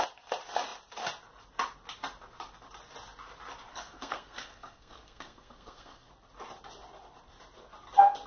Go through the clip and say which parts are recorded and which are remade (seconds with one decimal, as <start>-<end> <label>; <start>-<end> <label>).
0.0-3.7 recorded; 3.7-6.1 remade; 6.1-8.3 recorded